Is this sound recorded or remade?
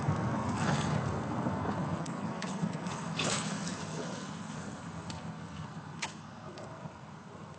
remade